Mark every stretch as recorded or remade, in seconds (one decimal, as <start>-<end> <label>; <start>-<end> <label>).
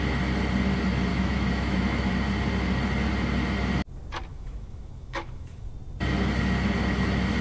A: 0.0-1.1 recorded; 1.1-2.1 remade; 2.1-4.3 recorded; 4.3-5.7 remade; 5.7-7.4 recorded